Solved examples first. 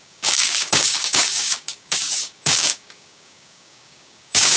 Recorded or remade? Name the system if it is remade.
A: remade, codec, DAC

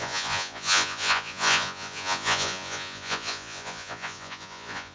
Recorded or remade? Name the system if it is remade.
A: remade, vocoder, Vocos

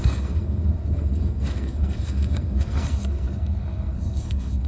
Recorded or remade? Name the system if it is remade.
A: remade, codec, SNAC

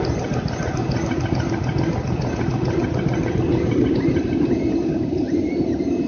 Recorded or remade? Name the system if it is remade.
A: recorded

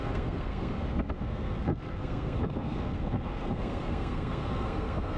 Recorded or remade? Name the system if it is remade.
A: remade, codec, SNAC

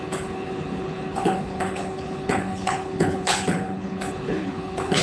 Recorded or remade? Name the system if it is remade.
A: remade, codec, HILCodec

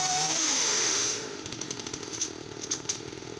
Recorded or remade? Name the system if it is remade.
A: remade, autoencoder, DAC-VAE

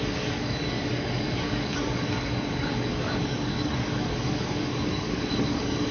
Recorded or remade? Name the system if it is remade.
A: remade, codec, DAC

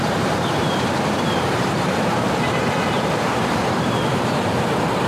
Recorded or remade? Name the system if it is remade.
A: remade, vocoder, BigVGAN v2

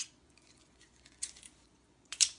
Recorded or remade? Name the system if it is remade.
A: remade, vocoder, Vocos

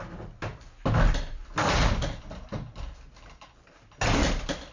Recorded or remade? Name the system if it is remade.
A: recorded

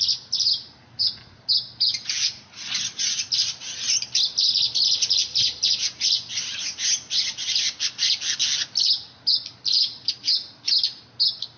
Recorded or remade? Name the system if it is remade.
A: recorded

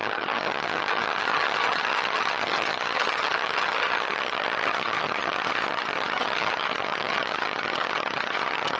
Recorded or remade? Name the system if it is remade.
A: remade, vocoder, HiFi-GAN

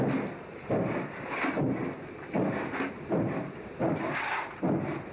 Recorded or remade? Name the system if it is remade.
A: recorded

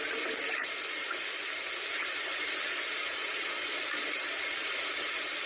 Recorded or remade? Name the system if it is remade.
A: recorded